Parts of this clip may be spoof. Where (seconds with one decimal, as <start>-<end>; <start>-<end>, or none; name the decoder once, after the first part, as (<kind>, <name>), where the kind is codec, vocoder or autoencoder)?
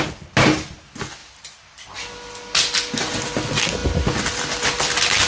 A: none